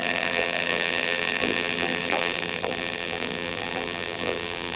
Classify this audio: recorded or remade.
remade